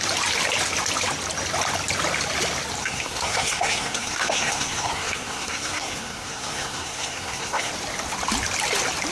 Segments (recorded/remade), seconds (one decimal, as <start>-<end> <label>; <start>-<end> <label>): 0.0-2.8 recorded; 2.8-7.7 remade; 7.7-9.1 recorded